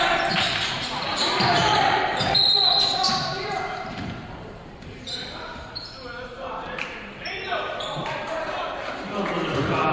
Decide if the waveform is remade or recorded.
remade